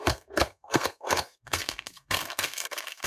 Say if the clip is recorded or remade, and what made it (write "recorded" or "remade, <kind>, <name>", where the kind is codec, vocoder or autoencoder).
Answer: remade, codec, SNAC